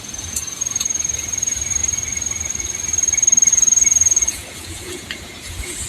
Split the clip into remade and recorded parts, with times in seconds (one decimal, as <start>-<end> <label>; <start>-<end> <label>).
0.0-1.8 remade; 1.8-3.5 recorded; 3.5-5.9 remade